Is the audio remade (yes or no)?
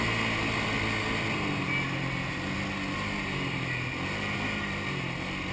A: no